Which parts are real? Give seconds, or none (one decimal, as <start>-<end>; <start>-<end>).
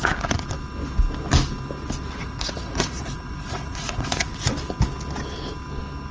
0.0-2.2; 4.5-6.1